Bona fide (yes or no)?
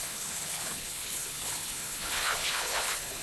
no